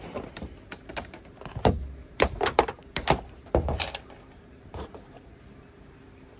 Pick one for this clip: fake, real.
fake